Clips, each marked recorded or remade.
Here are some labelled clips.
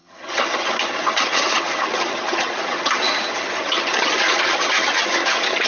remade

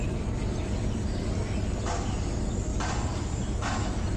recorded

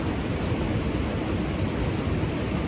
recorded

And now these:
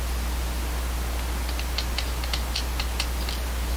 recorded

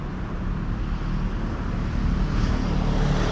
recorded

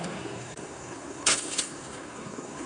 remade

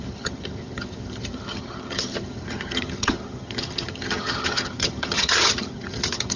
remade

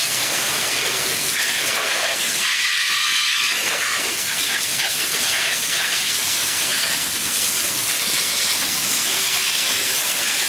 remade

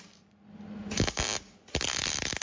recorded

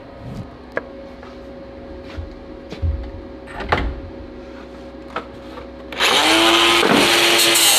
recorded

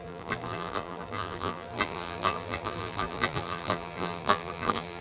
remade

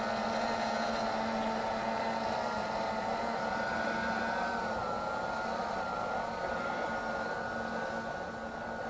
recorded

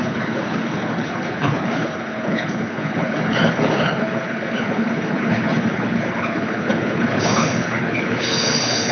remade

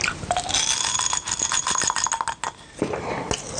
recorded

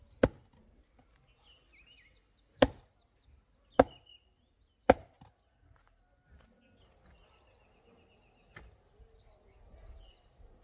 recorded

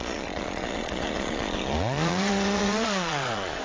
remade